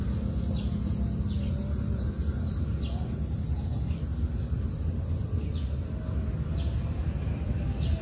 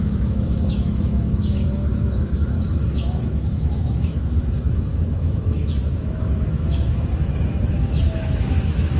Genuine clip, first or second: first